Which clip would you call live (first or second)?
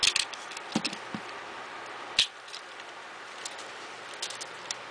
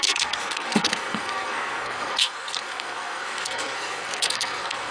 first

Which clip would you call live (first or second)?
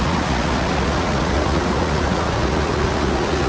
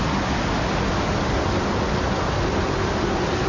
second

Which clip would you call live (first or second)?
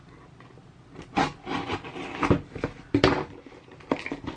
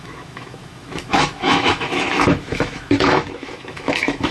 first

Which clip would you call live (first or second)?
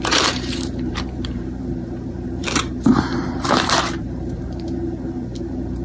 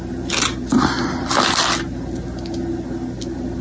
second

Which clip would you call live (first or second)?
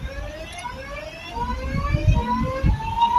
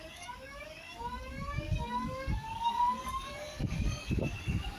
first